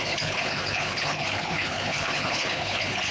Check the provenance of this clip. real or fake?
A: fake